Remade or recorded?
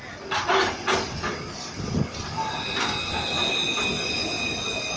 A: recorded